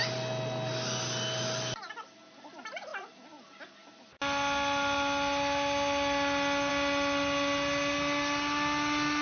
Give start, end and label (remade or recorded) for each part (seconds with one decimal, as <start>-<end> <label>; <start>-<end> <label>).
0.0-9.2 recorded